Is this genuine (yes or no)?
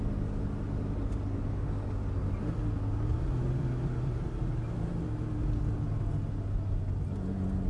yes